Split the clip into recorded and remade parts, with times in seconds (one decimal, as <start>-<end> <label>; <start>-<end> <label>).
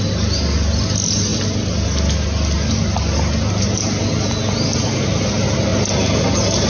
0.0-6.7 recorded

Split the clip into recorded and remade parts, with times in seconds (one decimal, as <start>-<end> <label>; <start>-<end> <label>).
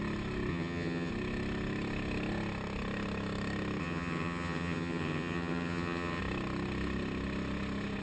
0.0-0.5 recorded; 0.5-1.1 remade; 1.1-3.8 recorded; 3.8-6.2 remade; 6.2-8.0 recorded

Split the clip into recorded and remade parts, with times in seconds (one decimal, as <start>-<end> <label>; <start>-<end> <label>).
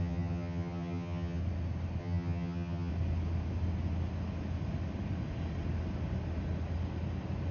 0.0-1.4 remade; 1.4-2.0 recorded; 2.0-2.9 remade; 2.9-7.5 recorded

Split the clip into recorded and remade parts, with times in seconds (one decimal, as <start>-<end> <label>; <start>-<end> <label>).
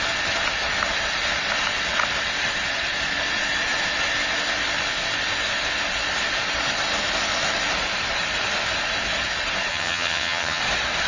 0.0-9.7 recorded; 9.7-10.6 remade; 10.6-11.1 recorded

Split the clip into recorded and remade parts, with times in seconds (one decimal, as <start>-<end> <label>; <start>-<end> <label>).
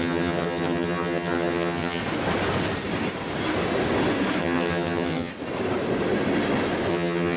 0.0-2.0 remade; 2.0-4.4 recorded; 4.4-5.3 remade; 5.3-6.9 recorded; 6.9-7.4 remade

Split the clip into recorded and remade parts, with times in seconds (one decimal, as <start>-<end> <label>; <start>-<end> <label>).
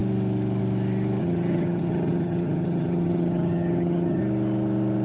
0.0-1.2 recorded; 1.2-4.2 remade; 4.2-5.0 recorded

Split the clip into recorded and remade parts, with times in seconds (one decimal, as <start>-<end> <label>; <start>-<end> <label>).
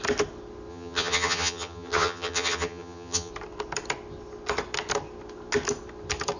0.0-0.7 recorded; 0.7-3.3 remade; 3.3-6.4 recorded